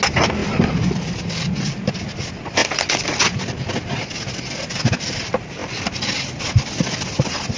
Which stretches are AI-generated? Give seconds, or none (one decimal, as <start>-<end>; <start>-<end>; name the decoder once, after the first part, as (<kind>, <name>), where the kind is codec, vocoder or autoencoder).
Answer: 0.4-1.9 (vocoder, BigVGAN v2)